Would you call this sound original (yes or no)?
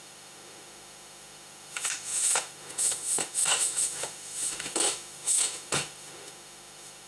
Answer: no